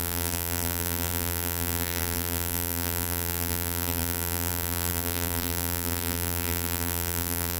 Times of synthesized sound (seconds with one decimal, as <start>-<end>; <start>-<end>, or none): 0.0-7.6

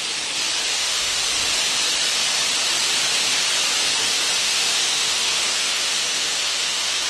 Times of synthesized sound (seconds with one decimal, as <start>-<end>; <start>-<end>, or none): 0.7-1.2; 4.4-7.1